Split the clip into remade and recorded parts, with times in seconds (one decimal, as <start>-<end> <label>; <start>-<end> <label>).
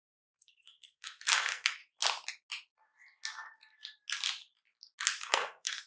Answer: 0.0-1.8 remade; 1.8-5.2 recorded; 5.2-5.9 remade